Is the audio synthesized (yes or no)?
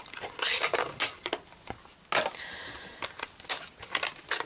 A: no